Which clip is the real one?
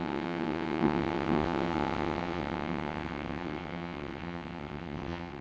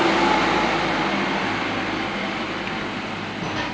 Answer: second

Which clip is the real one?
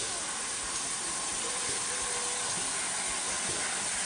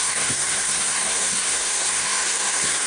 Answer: first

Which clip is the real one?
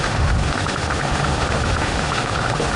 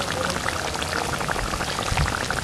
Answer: second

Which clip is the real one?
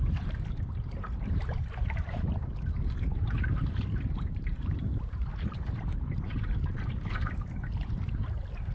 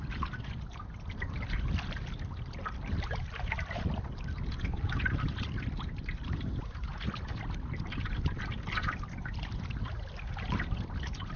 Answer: second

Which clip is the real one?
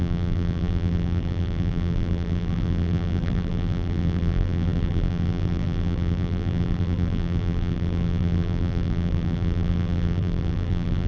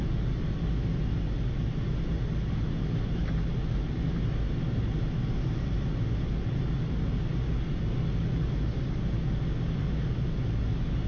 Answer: second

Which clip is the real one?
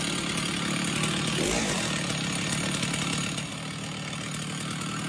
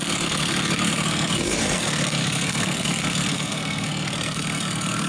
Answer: first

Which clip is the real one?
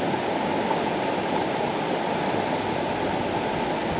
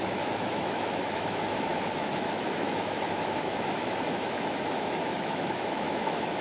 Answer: first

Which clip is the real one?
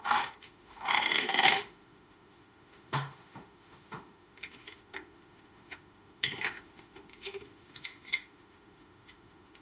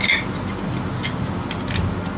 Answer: second